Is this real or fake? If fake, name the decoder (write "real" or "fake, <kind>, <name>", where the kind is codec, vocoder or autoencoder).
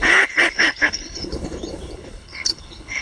fake, codec, HILCodec